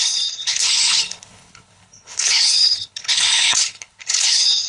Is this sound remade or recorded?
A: remade